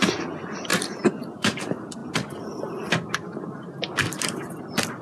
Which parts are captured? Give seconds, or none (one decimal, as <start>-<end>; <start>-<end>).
0.0-0.7; 1.6-5.0